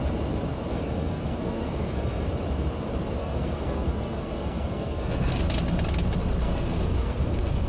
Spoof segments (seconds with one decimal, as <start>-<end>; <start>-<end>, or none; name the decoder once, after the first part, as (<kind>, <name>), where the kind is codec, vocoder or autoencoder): 0.7-2.3 (codec, SNAC); 3.2-5.4; 6.4-7.7